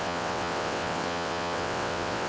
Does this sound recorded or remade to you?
remade